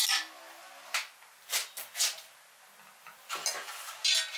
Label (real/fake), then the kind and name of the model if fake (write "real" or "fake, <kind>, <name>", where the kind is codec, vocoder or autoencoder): real